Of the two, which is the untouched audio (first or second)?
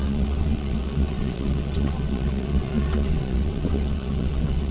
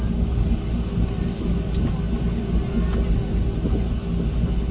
second